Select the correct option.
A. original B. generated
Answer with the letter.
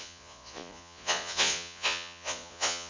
B